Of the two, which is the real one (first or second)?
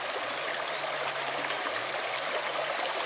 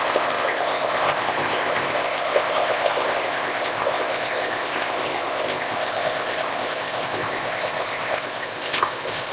first